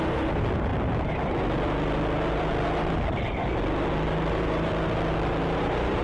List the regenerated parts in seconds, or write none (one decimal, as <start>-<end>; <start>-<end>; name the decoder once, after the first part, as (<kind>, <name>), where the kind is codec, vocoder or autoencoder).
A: 0.0-0.7 (vocoder, BigVGAN v2); 4.3-4.7; 5.6-6.0

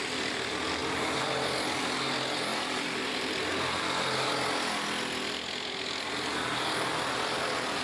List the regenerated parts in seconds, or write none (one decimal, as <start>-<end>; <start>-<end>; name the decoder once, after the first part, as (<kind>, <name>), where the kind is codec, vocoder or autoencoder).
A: 2.5-3.8 (vocoder, BigVGAN v2)

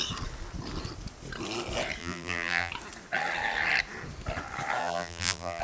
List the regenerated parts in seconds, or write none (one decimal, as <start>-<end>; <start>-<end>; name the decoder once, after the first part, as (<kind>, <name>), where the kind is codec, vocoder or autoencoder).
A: 2.0-2.7 (vocoder, BigVGAN v2); 4.8-5.6

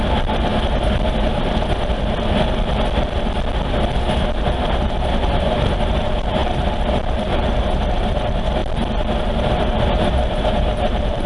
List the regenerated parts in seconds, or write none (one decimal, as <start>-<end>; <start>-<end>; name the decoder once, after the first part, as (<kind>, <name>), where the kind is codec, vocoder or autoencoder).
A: 0.0-0.5 (vocoder, BigVGAN v2); 4.5-8.6; 9.2-11.3

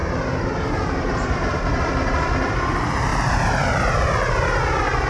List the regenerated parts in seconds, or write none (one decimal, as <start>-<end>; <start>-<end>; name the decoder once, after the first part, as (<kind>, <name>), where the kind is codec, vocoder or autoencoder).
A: 0.0-1.7 (vocoder, BigVGAN v2); 3.1-4.6